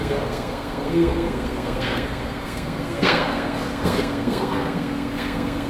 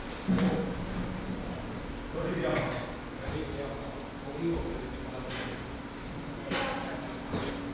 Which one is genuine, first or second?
second